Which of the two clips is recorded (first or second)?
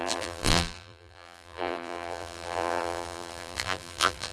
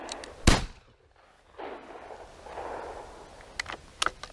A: second